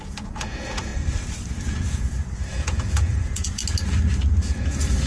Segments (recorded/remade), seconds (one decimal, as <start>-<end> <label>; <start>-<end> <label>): 0.0-0.9 remade; 0.9-1.7 recorded; 1.7-3.6 remade; 3.6-4.3 recorded; 4.3-5.1 remade